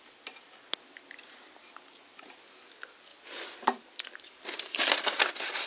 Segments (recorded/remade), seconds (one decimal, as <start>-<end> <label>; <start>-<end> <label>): 0.0-3.1 recorded; 3.1-4.6 remade; 4.6-5.7 recorded